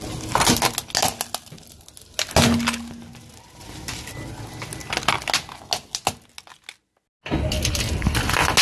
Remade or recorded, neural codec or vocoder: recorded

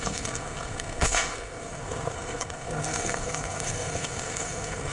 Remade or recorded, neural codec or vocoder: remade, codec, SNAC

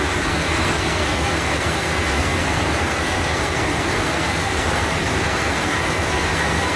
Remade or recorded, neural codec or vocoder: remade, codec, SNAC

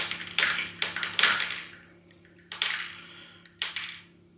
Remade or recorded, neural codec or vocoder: recorded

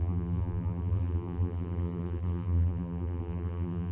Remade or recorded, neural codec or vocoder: remade, vocoder, BigVGAN v2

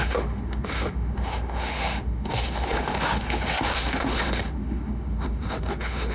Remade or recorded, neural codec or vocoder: remade, autoencoder, DAC-VAE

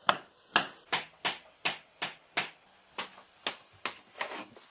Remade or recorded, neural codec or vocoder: recorded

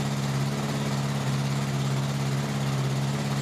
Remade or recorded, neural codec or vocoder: recorded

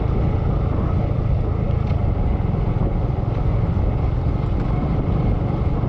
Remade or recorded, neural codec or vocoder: recorded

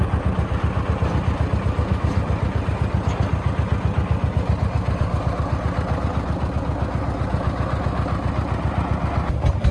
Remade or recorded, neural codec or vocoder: recorded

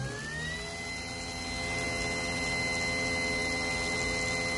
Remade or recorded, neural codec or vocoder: recorded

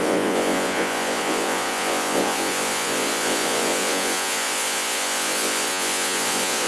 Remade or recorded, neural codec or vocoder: remade, vocoder, Vocos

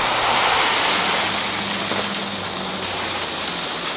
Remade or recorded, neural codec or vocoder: recorded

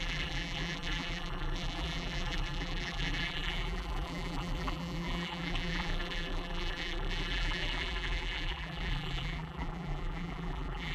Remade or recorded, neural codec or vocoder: remade, vocoder, BigVGAN v2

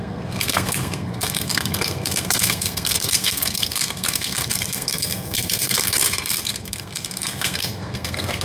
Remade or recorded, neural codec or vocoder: remade, codec, SNAC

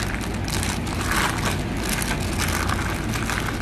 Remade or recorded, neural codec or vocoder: recorded